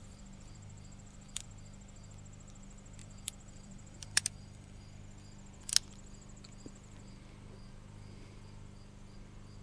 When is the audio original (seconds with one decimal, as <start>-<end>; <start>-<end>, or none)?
1.5-3.0; 5.0-9.6